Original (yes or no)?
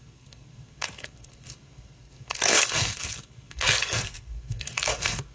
no